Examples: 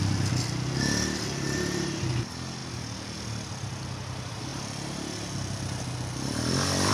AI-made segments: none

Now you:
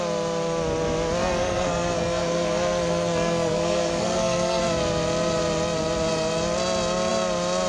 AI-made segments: 1.2-4.6 (codec, SNAC)

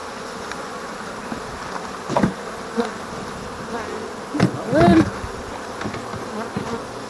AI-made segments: 0.0-0.8 (vocoder, Vocos)

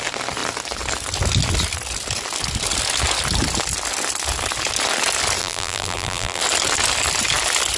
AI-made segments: 5.4-6.4 (vocoder, BigVGAN v2)

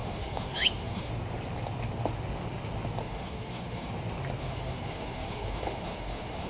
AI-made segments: 0.0-1.1 (autoencoder, DAC-VAE); 3.0-3.9; 4.4-6.5

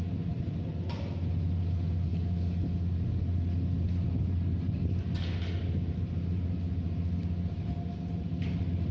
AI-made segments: none

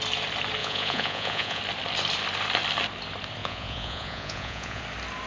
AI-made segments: 0.6-1.6 (vocoder, Vocos); 3.4-4.8